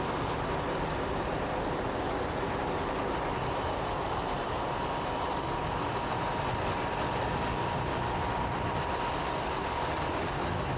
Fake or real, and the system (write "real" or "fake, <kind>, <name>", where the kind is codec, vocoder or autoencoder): real